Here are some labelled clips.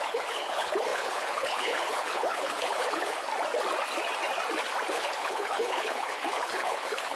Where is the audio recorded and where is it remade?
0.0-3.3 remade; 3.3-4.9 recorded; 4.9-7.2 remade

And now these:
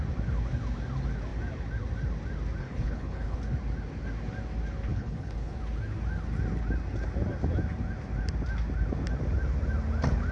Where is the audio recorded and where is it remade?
0.0-2.6 recorded; 2.6-3.4 remade; 3.4-4.9 recorded; 4.9-5.6 remade; 5.6-10.3 recorded